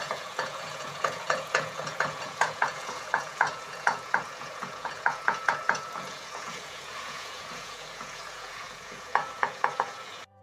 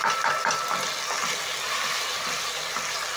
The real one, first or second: second